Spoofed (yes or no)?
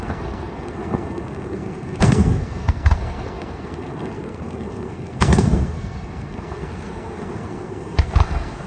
yes